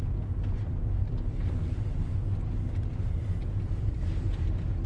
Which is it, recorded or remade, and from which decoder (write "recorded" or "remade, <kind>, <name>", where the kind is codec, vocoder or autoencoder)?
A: recorded